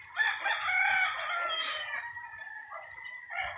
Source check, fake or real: real